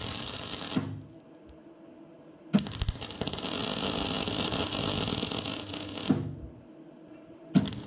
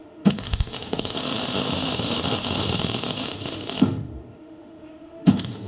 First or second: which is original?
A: first